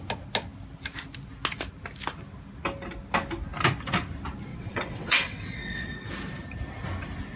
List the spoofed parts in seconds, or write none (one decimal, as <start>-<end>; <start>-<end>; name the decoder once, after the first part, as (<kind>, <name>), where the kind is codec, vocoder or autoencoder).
4.5-6.1 (vocoder, WaveNeXt)